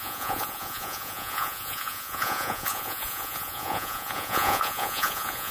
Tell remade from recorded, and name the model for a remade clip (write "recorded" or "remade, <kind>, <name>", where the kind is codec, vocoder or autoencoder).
remade, vocoder, Vocos